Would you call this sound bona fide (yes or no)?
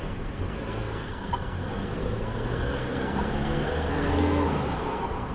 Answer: no